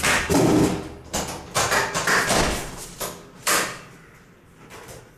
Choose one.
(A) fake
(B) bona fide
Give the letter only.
B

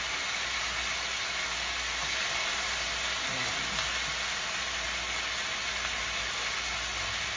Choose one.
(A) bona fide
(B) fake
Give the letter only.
A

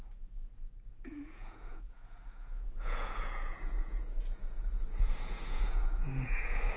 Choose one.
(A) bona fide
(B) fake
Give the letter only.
B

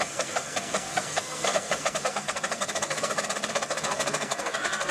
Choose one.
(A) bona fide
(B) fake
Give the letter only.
B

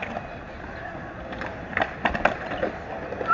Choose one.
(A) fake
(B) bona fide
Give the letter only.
B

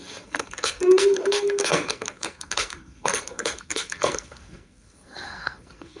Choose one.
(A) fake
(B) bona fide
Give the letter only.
A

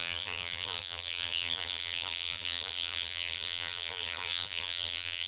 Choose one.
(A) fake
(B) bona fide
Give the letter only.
A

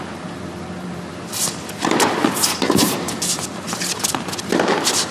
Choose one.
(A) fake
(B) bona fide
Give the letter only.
A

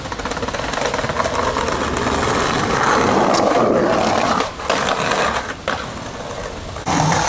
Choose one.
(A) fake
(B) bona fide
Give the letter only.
B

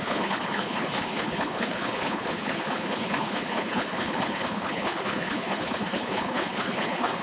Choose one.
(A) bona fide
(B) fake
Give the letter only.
B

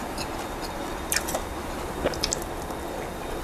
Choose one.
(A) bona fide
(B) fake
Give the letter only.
A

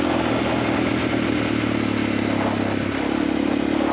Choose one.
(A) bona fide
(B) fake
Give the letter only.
A